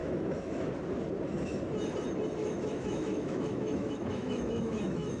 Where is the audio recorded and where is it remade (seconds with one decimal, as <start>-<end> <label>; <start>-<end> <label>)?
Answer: 0.0-0.7 remade; 0.7-2.4 recorded; 2.4-5.2 remade